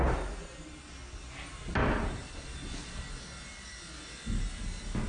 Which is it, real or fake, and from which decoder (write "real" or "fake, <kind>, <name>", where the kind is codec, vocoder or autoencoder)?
real